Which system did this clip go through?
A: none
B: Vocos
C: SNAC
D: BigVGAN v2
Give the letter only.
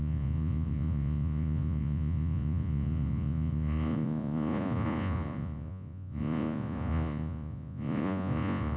B